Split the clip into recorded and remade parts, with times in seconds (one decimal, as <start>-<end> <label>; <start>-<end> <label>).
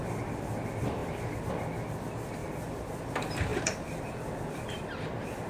0.0-2.4 recorded; 2.4-3.1 remade; 3.1-3.5 recorded; 3.5-4.1 remade; 4.1-5.5 recorded